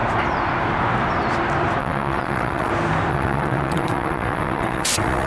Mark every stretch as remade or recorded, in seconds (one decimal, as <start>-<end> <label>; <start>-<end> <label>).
0.0-1.8 recorded; 1.8-2.7 remade; 2.7-3.1 recorded; 3.1-5.3 remade